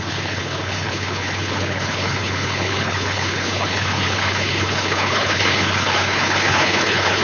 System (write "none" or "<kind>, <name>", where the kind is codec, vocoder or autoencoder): codec, HILCodec